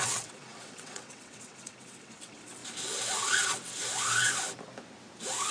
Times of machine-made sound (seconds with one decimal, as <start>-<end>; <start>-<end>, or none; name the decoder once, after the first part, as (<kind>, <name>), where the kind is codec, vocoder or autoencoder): 0.0-2.6 (vocoder, WaveNeXt); 3.2-3.7

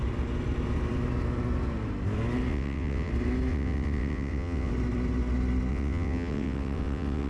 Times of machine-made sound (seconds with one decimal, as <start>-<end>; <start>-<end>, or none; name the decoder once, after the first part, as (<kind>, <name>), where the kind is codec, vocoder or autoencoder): 2.5-3.1 (vocoder, WaveNeXt); 3.5-4.7; 5.7-7.3

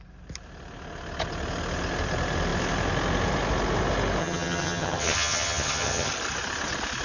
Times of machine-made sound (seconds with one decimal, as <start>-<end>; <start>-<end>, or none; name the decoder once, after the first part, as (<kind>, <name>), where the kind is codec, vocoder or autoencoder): 4.2-6.1 (vocoder, HiFi-GAN)

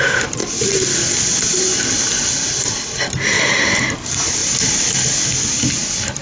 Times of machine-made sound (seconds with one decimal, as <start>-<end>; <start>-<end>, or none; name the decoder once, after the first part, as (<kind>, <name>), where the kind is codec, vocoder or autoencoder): 0.0-0.4 (vocoder, BigVGAN v2); 3.4-4.4; 5.8-6.2

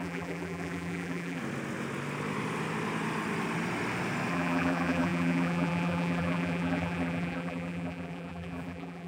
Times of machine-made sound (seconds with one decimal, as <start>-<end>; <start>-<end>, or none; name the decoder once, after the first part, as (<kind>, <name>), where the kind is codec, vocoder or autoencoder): 0.0-1.4 (vocoder, BigVGAN v2); 4.3-9.1

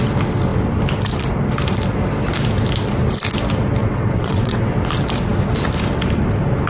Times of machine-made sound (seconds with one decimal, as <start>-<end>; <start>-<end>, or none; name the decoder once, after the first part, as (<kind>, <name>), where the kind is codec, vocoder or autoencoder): 3.8-4.7 (vocoder, WaveNeXt)

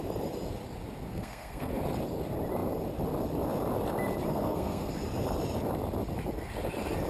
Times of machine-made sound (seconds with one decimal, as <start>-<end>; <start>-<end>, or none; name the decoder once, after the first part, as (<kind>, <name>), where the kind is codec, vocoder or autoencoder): 1.1-1.7 (codec, SNAC); 4.3-4.9

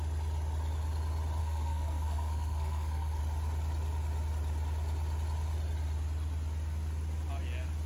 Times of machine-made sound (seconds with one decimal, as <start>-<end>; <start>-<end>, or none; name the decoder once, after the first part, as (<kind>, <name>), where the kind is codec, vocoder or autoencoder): 1.4-3.2 (codec, SNAC)